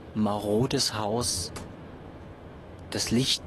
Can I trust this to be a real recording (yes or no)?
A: no